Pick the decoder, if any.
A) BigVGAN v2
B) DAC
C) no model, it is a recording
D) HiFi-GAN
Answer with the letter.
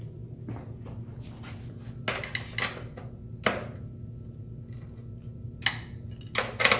C